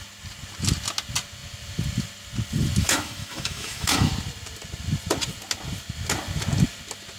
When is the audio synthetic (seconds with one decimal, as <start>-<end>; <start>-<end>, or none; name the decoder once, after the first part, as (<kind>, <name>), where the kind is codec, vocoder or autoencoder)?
2.8-4.1 (autoencoder, DAC-VAE)

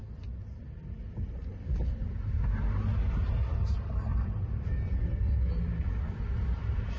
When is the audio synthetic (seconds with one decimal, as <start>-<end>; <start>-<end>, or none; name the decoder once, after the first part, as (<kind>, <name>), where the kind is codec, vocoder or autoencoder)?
0.0-2.4 (vocoder, BigVGAN v2); 4.1-5.3